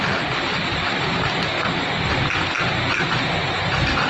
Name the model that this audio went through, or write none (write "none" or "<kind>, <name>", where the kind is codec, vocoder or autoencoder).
none